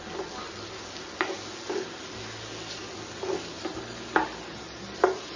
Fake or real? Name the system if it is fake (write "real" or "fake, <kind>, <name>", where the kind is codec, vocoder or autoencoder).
real